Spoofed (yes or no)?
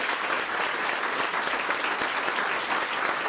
no